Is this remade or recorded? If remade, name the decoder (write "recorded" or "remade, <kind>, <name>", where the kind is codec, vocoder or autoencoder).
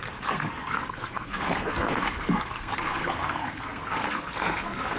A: remade, codec, SNAC